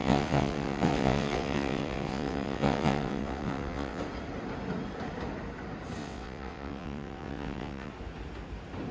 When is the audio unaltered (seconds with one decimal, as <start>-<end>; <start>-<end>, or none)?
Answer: 4.0-6.0; 7.9-8.9